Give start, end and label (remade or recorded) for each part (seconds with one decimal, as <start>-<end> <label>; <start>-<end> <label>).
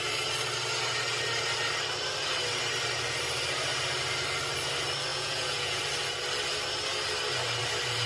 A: 0.0-5.1 recorded; 5.1-5.8 remade; 5.8-8.1 recorded